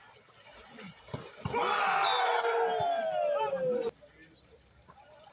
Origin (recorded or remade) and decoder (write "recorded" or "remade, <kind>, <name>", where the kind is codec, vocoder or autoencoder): recorded